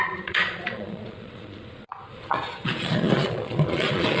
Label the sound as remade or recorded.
remade